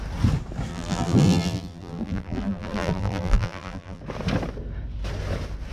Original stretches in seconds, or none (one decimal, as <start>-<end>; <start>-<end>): 0.0-0.7; 4.0-5.7